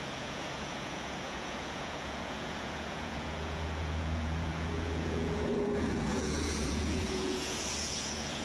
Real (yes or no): no